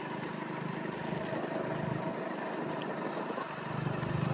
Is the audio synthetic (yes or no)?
no